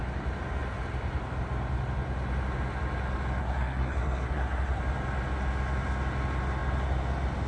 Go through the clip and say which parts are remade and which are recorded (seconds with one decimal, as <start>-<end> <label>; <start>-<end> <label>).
0.0-3.4 recorded; 3.4-4.8 remade; 4.8-7.5 recorded

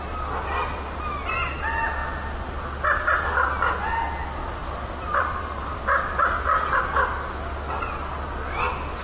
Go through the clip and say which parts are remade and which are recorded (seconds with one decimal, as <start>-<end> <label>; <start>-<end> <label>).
0.0-4.6 recorded; 4.6-5.8 remade; 5.8-9.0 recorded

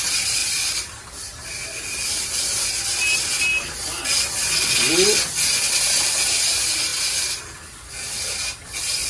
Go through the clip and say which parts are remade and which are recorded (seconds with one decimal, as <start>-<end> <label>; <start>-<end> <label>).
0.0-3.5 recorded; 3.5-4.9 remade; 4.9-9.1 recorded

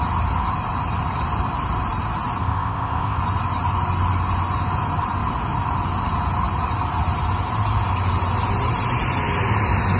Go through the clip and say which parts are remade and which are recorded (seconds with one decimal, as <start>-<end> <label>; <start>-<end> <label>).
0.0-2.4 recorded; 2.4-3.2 remade; 3.2-10.0 recorded